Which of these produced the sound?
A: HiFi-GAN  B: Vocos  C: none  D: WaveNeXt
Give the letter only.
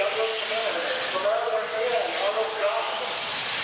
C